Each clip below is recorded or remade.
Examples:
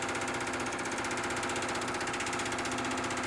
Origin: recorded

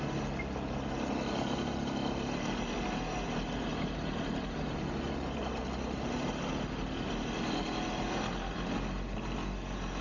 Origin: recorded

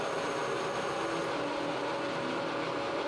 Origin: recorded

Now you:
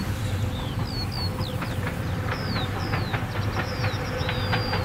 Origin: recorded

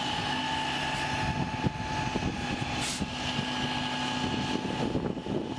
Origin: recorded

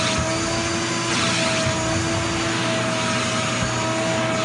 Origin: recorded